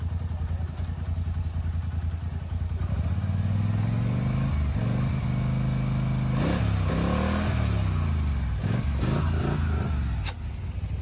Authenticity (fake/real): real